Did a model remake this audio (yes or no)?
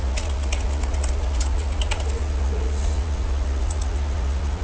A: yes